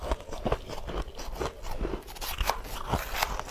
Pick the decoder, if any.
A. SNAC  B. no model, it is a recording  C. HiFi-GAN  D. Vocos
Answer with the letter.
B